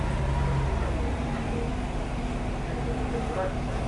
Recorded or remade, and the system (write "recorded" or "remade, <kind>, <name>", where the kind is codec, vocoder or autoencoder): recorded